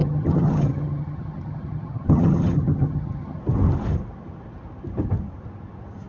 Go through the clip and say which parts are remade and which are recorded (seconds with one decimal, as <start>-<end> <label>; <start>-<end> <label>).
0.0-3.4 remade; 3.4-6.1 recorded

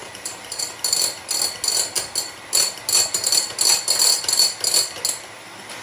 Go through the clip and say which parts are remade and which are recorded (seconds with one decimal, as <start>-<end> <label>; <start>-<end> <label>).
0.0-0.6 remade; 0.6-5.8 recorded

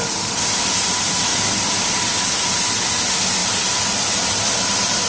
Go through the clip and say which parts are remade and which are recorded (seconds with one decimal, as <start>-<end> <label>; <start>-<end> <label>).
0.0-5.1 recorded

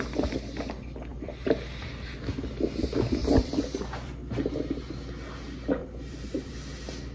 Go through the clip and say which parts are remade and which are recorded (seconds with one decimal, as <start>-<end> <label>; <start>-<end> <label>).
0.0-1.1 recorded; 1.1-1.8 remade; 1.8-3.2 recorded; 3.2-4.3 remade; 4.3-5.8 recorded; 5.8-6.5 remade; 6.5-7.1 recorded